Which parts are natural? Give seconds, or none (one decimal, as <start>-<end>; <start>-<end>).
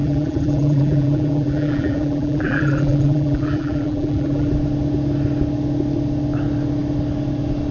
4.5-7.7